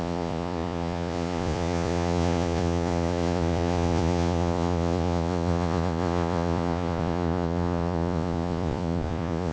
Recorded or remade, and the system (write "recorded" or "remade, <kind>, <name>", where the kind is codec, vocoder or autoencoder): remade, vocoder, Vocos